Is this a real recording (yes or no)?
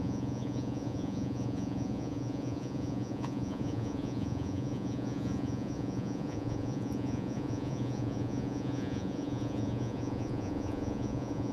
no